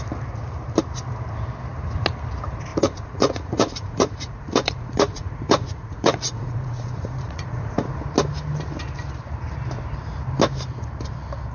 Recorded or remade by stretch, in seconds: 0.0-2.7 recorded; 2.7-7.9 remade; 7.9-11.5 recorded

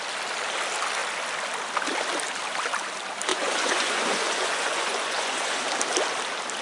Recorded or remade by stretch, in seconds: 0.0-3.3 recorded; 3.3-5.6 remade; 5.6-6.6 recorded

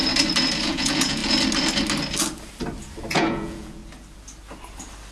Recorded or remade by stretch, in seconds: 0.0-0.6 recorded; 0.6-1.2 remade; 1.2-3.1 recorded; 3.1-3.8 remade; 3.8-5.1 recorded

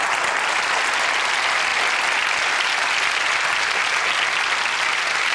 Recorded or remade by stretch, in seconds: 0.0-5.3 recorded

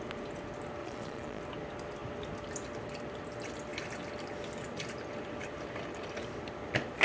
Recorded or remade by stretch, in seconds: 0.0-0.8 recorded; 0.8-1.4 remade; 1.4-7.0 recorded